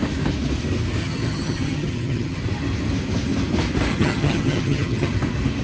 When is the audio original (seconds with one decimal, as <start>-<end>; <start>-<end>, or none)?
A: 0.0-1.0; 2.4-3.9; 5.1-5.6

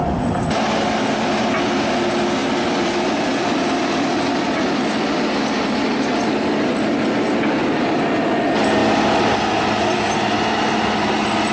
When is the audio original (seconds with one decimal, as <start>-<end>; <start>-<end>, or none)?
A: 0.0-11.5

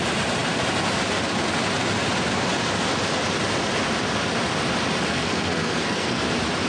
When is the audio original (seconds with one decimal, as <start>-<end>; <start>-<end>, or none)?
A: 0.0-5.1; 6.2-6.7